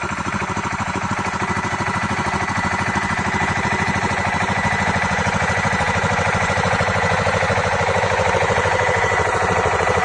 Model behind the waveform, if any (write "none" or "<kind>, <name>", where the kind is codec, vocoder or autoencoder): vocoder, Vocos